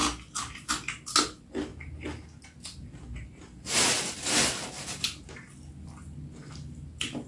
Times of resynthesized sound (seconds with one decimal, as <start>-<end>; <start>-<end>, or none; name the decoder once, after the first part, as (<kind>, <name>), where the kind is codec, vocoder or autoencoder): none